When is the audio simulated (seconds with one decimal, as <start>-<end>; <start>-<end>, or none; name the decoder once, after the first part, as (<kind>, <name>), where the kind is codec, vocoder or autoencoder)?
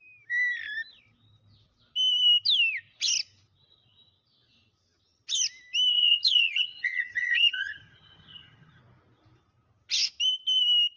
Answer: 5.9-8.8 (vocoder, HiFi-GAN)